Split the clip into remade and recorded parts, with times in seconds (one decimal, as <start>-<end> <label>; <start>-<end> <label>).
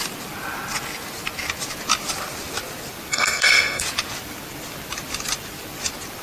0.0-3.1 recorded; 3.1-3.8 remade; 3.8-6.2 recorded